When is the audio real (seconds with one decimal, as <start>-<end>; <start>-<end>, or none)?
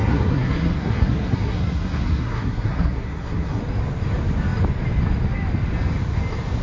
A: 3.6-6.6